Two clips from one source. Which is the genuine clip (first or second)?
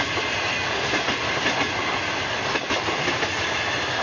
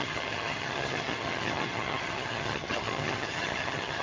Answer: first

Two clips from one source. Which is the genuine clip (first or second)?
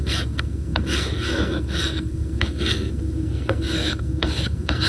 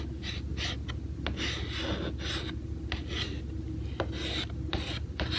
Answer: second